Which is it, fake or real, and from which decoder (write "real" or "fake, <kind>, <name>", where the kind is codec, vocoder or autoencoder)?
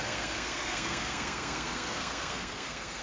fake, codec, SNAC